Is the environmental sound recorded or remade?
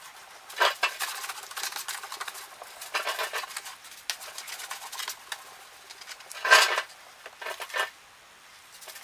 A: recorded